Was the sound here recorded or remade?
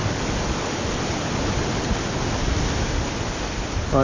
recorded